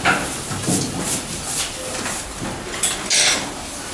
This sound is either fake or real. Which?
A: real